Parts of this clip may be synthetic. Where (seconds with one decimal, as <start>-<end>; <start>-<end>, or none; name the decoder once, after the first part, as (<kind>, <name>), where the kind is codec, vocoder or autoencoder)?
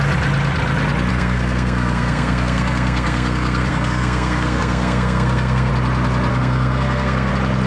1.1-5.7 (codec, SNAC); 6.3-7.3